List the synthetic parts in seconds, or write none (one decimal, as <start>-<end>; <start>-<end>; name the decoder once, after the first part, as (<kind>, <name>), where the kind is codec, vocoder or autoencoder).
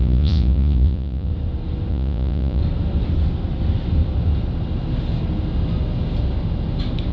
0.0-1.3 (vocoder, Vocos); 1.9-2.6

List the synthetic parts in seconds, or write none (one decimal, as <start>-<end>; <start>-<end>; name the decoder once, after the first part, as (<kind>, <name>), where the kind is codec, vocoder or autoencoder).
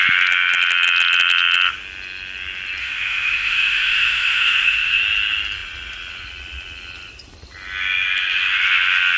2.8-5.0 (autoencoder, DAC-VAE)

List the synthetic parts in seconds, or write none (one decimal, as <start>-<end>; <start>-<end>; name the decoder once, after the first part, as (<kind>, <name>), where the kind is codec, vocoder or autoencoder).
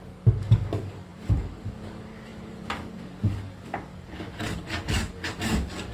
0.0-5.9 (codec, DAC)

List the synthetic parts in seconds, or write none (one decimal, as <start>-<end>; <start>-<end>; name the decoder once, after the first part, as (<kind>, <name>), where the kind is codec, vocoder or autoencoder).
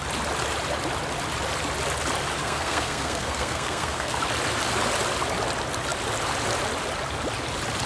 2.4-4.2 (codec, SNAC)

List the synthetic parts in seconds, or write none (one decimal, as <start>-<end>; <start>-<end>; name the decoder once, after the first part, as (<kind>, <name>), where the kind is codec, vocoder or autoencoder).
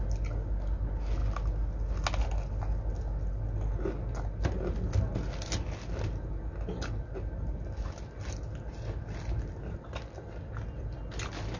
none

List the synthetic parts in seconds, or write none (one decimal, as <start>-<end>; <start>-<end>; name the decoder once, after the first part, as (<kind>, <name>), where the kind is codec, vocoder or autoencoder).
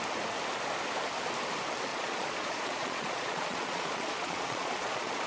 1.9-5.3 (vocoder, Vocos)